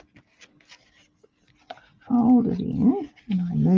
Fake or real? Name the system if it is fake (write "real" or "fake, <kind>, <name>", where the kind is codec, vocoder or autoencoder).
real